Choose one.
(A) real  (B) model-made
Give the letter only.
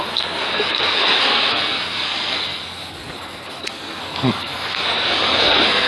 B